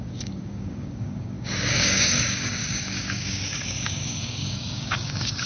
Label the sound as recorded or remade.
remade